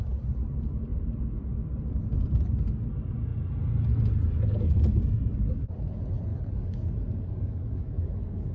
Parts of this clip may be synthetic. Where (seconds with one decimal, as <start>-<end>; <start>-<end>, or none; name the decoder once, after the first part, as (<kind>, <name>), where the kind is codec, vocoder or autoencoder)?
4.5-5.0 (codec, DAC); 6.3-8.5